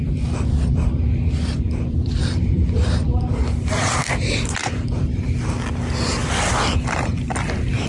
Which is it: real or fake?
fake